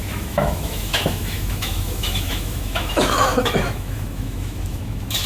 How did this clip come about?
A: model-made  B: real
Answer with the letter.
A